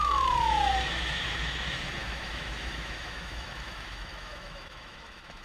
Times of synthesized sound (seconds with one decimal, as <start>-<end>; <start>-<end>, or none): 0.0-5.4